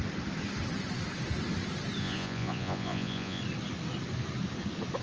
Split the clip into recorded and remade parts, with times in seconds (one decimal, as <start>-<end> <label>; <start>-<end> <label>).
0.0-2.0 recorded; 2.0-3.4 remade; 3.4-5.0 recorded